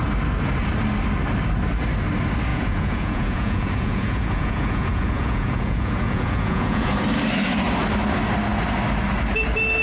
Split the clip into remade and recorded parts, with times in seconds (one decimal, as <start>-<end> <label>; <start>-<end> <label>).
0.0-2.5 recorded; 2.5-6.9 remade; 6.9-9.8 recorded